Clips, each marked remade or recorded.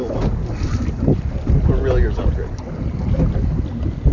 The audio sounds recorded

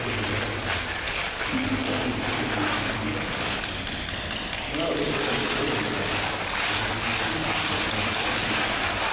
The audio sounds recorded